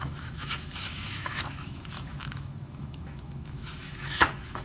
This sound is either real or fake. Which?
fake